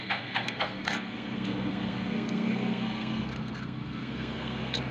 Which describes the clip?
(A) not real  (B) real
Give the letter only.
A